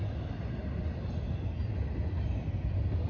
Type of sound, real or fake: real